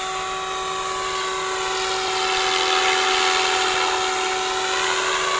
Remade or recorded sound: recorded